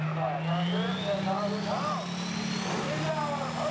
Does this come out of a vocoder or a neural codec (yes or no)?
no